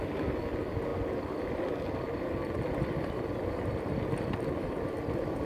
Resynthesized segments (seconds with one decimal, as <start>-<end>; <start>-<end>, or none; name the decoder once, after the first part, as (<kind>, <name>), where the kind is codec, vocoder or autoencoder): none